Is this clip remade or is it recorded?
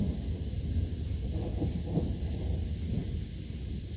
recorded